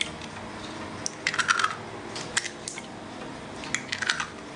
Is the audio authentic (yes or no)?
yes